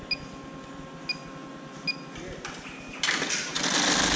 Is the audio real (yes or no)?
yes